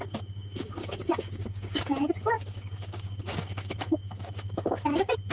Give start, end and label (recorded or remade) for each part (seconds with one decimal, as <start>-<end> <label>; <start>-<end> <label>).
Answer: 0.0-5.3 remade